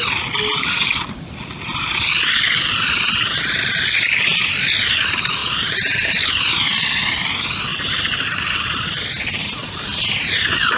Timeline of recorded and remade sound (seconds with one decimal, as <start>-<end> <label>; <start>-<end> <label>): 0.0-7.7 recorded; 7.7-8.9 remade; 8.9-9.6 recorded; 9.6-10.4 remade; 10.4-10.8 recorded